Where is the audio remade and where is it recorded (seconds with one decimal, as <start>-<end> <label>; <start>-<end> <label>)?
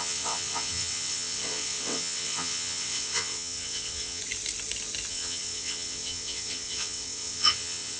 0.0-4.2 remade; 4.2-5.1 recorded; 5.1-8.0 remade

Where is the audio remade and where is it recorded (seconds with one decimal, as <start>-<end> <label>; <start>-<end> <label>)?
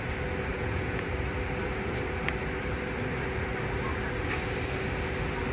0.0-0.5 recorded; 0.5-1.1 remade; 1.1-5.5 recorded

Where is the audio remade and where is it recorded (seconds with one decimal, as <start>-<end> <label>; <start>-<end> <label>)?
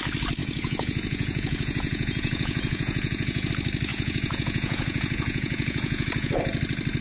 0.0-0.4 recorded; 0.4-3.5 remade; 3.5-3.9 recorded; 3.9-6.3 remade; 6.3-7.0 recorded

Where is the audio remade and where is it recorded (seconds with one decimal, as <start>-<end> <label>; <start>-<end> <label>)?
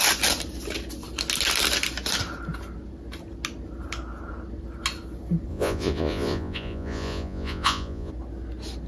0.0-5.5 recorded; 5.5-8.1 remade; 8.1-8.9 recorded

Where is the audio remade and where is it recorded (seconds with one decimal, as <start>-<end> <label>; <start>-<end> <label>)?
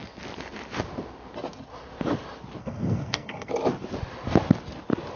0.0-2.6 recorded; 2.6-3.5 remade; 3.5-5.2 recorded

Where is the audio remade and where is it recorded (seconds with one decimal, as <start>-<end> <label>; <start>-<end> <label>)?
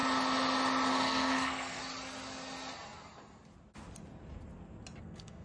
0.0-0.9 recorded; 0.9-1.8 remade; 1.8-5.0 recorded; 5.0-5.4 remade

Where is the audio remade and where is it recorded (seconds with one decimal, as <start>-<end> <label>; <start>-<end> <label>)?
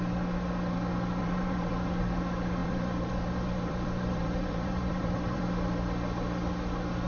0.0-1.2 recorded; 1.2-1.7 remade; 1.7-2.6 recorded; 2.6-5.4 remade; 5.4-7.1 recorded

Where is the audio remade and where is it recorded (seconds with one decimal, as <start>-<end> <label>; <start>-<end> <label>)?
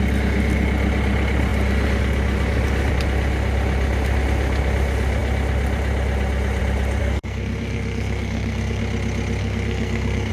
0.0-7.0 recorded; 7.0-8.8 remade; 8.8-9.4 recorded; 9.4-10.3 remade